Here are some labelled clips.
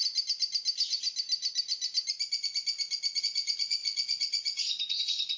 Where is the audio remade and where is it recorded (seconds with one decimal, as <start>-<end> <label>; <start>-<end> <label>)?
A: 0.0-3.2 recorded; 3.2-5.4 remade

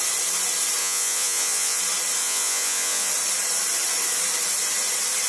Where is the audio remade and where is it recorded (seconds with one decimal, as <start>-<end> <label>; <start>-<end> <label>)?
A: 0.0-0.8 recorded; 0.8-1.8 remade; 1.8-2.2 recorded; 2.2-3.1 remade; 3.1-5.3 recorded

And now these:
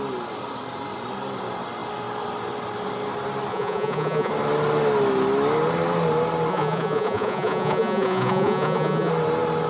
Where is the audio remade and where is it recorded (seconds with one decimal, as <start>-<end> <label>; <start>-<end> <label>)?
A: 0.0-3.5 recorded; 3.5-4.3 remade; 4.3-6.5 recorded; 6.5-9.1 remade; 9.1-9.7 recorded

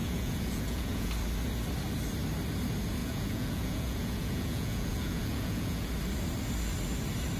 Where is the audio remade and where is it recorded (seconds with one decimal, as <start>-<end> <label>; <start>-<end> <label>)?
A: 0.0-1.1 remade; 1.1-3.0 recorded; 3.0-5.9 remade; 5.9-7.4 recorded

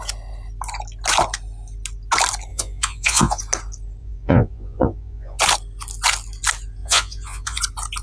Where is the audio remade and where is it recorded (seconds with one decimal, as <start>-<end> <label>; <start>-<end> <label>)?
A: 0.0-2.5 recorded; 2.5-3.4 remade; 3.4-4.0 recorded; 4.0-5.4 remade; 5.4-6.8 recorded; 6.8-7.6 remade; 7.6-8.0 recorded

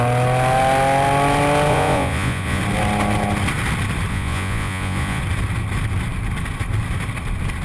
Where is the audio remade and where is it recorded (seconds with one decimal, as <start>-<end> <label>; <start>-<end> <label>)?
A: 0.0-1.7 recorded; 1.7-2.6 remade; 2.6-4.1 recorded; 4.1-5.2 remade; 5.2-7.6 recorded

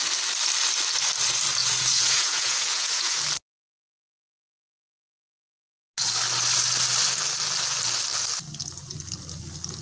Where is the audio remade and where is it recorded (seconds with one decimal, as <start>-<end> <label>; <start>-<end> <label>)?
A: 0.0-1.6 recorded; 1.6-3.2 remade; 3.2-9.8 recorded

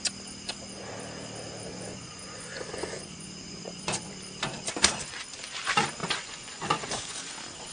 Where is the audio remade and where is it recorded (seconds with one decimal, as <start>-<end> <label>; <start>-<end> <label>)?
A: 0.0-1.7 recorded; 1.7-4.1 remade; 4.1-6.0 recorded; 6.0-7.3 remade; 7.3-7.7 recorded